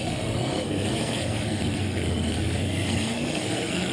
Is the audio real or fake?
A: fake